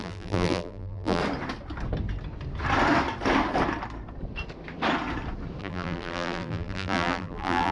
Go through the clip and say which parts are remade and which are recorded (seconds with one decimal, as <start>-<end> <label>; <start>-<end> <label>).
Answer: 0.0-1.2 remade; 1.2-5.6 recorded; 5.6-7.7 remade